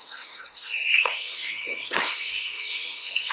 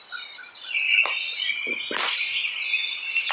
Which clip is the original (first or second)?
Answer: second